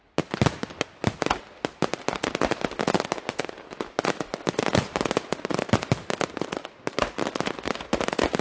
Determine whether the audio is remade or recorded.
recorded